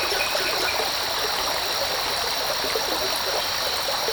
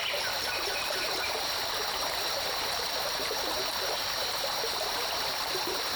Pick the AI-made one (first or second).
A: second